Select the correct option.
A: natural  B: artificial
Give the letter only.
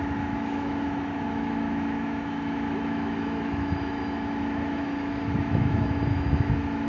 B